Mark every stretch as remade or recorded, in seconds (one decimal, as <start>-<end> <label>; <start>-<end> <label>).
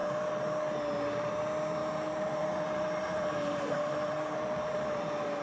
0.0-1.8 recorded; 1.8-5.0 remade; 5.0-5.4 recorded